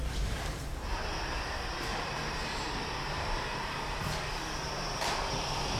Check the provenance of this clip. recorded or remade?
remade